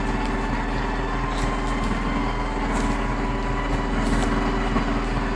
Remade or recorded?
recorded